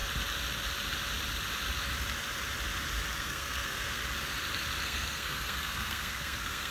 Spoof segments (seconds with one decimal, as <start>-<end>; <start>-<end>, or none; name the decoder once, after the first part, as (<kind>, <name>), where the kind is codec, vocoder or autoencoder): 3.2-4.0 (codec, SNAC); 4.8-6.7